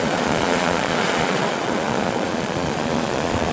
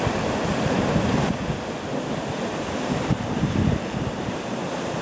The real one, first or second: second